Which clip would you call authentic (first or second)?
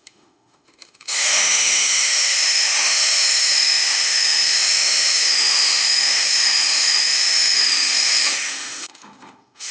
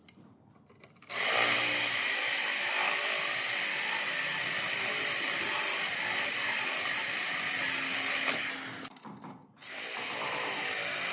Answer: second